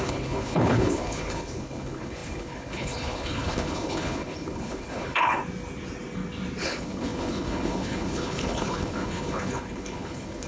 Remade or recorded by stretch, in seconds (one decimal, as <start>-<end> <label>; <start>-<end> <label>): 0.0-5.4 remade; 5.4-6.6 recorded; 6.6-10.5 remade